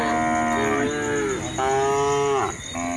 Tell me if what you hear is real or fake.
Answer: real